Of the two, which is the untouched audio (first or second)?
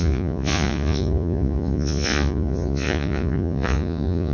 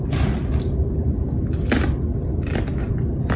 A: second